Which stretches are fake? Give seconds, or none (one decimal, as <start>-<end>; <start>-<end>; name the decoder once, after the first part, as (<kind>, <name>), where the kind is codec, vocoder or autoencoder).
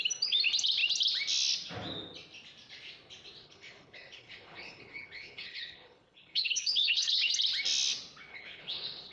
3.4-7.3 (codec, HILCodec); 8.3-9.1